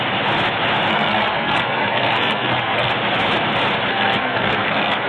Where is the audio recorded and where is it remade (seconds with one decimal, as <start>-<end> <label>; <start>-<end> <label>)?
0.0-0.9 recorded; 0.9-2.9 remade; 2.9-3.9 recorded; 3.9-5.1 remade